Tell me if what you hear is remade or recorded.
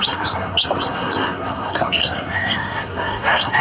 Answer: remade